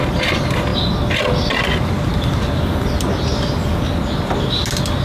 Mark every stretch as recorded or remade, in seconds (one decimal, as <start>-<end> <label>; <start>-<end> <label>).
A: 0.0-5.0 recorded